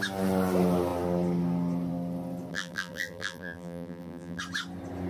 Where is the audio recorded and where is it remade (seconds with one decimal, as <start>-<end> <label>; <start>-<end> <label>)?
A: 0.0-2.5 recorded; 2.5-4.4 remade; 4.4-5.1 recorded